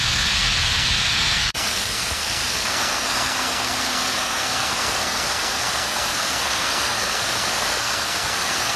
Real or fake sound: fake